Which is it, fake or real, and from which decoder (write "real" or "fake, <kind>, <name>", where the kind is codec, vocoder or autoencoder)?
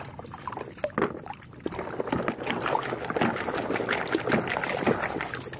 real